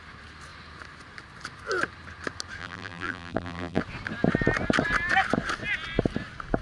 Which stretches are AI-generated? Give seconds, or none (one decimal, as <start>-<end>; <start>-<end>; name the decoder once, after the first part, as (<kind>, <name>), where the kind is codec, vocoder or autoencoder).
2.6-3.8 (vocoder, BigVGAN v2)